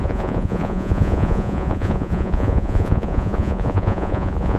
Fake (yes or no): yes